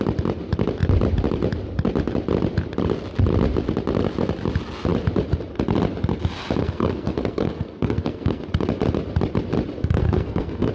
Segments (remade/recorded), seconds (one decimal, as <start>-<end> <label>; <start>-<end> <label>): 0.0-6.6 recorded; 6.6-8.4 remade; 8.4-9.8 recorded; 9.8-10.7 remade